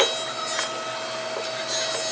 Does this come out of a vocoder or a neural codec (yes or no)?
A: no